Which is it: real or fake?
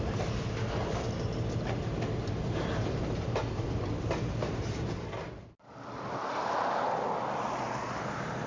real